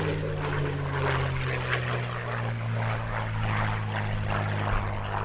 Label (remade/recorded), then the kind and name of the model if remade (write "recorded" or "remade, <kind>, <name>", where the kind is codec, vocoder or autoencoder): recorded